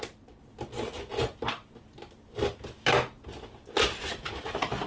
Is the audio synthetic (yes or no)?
no